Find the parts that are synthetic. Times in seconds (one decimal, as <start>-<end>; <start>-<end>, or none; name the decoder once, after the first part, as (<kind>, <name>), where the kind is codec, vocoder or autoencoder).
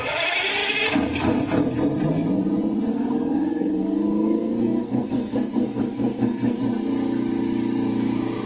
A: 2.9-6.6 (codec, SNAC)